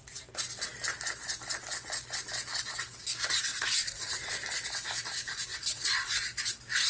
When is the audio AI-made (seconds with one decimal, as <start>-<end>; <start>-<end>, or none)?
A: 3.5-4.3; 5.5-6.4